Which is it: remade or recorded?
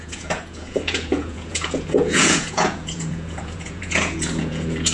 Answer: remade